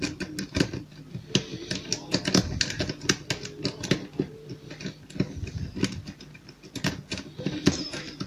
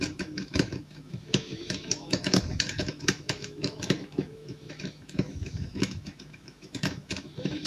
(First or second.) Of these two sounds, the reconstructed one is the second